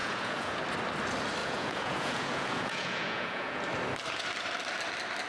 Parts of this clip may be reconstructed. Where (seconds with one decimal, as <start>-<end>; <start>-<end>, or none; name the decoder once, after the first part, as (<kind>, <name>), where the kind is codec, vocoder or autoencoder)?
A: 0.0-0.6 (vocoder, Vocos); 1.4-3.6